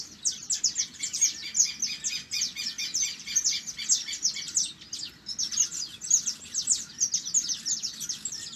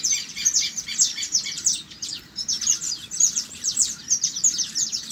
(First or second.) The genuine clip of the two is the first